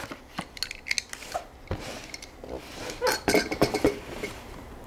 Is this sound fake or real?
real